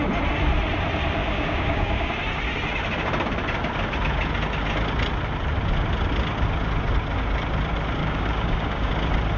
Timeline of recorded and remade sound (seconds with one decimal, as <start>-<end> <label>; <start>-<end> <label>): 0.0-1.2 recorded; 1.2-2.1 remade; 2.1-8.0 recorded; 8.0-8.9 remade; 8.9-9.4 recorded